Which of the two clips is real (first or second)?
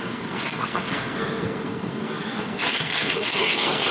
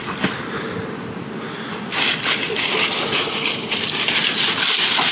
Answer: second